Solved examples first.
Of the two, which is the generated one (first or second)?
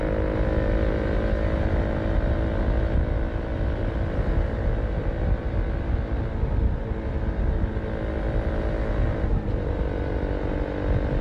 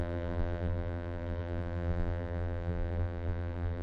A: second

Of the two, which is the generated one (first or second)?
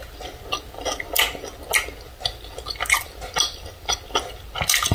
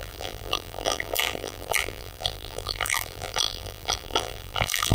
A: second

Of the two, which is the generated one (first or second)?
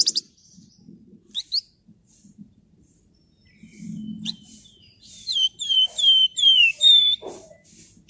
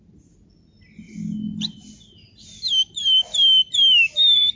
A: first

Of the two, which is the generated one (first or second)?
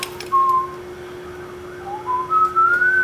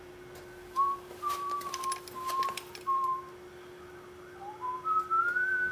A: second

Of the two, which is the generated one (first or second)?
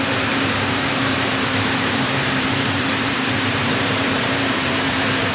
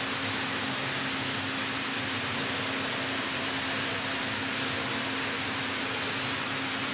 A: first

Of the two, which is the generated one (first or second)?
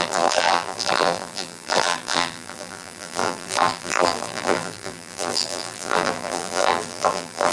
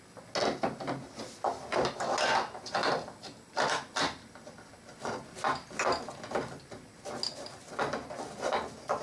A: first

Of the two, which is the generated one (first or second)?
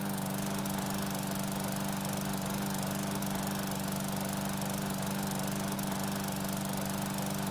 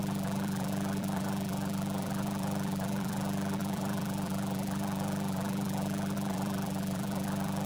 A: second